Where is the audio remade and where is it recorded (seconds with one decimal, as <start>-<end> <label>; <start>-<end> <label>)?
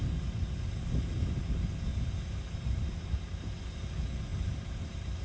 0.0-1.9 recorded; 1.9-3.5 remade; 3.5-4.3 recorded; 4.3-5.2 remade